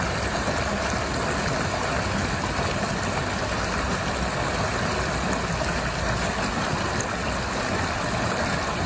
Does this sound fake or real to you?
real